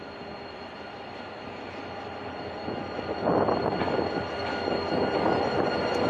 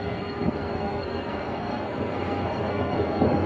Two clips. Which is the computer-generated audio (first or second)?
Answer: second